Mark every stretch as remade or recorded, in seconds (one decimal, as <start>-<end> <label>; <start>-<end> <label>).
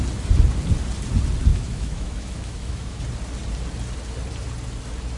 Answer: 0.0-1.5 recorded; 1.5-3.0 remade; 3.0-5.2 recorded